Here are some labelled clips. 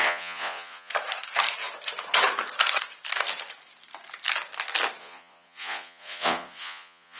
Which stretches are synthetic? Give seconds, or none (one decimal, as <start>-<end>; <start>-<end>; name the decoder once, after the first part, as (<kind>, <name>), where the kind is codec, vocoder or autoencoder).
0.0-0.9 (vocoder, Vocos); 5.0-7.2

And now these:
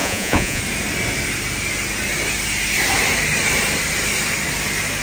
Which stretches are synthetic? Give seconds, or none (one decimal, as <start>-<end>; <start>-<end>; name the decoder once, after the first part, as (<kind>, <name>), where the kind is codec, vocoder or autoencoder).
0.0-0.6 (vocoder, Vocos)

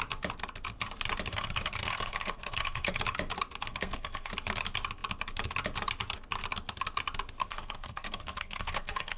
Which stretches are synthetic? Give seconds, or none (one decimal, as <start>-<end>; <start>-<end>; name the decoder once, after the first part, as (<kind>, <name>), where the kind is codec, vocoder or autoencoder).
1.3-3.0 (codec, SNAC); 3.7-4.3; 7.4-9.2

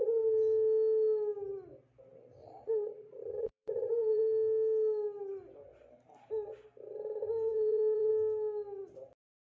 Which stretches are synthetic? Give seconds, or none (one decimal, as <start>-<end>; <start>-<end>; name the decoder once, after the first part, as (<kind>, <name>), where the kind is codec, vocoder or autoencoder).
2.4-4.2 (vocoder, Vocos); 7.5-8.1